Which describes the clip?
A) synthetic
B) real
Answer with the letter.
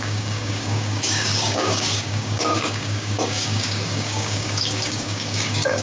A